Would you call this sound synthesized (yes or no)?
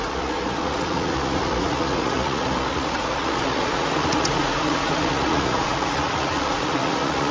yes